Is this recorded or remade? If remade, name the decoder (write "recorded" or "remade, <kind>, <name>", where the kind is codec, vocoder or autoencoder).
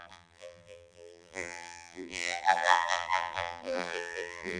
remade, vocoder, BigVGAN v2